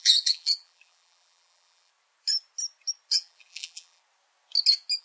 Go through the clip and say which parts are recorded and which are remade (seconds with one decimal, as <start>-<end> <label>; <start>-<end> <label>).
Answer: 0.0-1.9 remade; 1.9-3.1 recorded; 3.1-4.0 remade; 4.0-5.0 recorded